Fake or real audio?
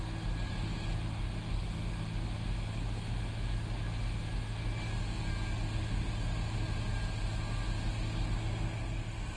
real